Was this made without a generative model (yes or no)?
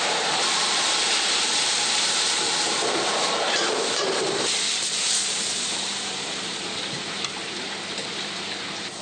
no